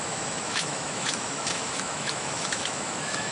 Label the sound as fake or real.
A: fake